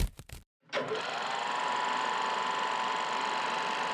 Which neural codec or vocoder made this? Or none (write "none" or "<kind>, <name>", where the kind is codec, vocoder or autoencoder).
vocoder, BigVGAN v2